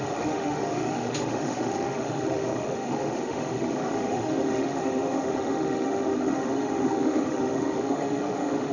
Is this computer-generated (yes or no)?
yes